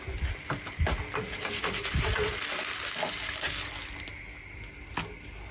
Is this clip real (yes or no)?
yes